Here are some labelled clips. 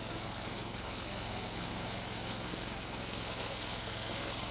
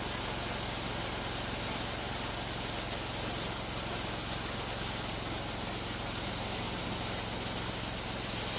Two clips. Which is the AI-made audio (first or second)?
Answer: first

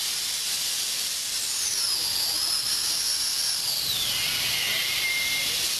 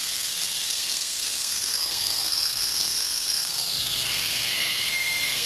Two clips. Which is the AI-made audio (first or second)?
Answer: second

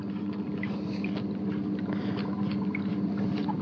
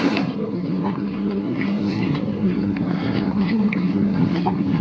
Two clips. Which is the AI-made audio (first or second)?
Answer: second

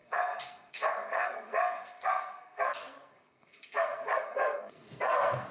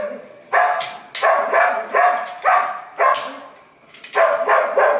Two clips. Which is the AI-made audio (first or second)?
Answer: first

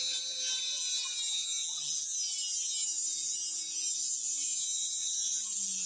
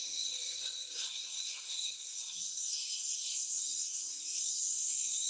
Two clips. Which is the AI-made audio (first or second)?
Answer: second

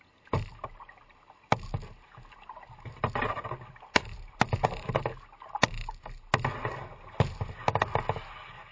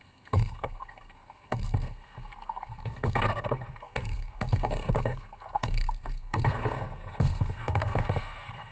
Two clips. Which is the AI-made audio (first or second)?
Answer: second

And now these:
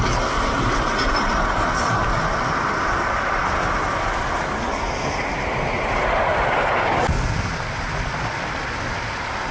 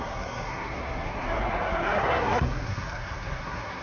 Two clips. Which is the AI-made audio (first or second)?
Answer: second